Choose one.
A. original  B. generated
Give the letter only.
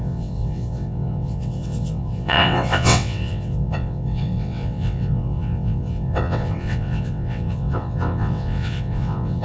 B